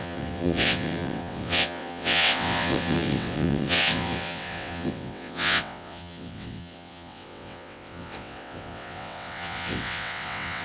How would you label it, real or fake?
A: fake